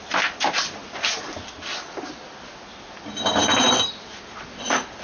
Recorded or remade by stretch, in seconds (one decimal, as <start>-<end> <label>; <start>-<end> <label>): 0.0-5.0 recorded